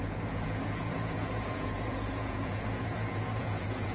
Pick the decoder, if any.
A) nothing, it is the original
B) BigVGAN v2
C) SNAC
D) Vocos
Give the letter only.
D